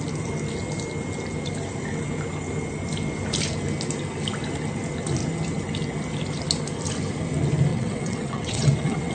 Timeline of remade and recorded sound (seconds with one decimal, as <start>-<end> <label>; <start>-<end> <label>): 0.0-7.7 recorded; 7.7-9.1 remade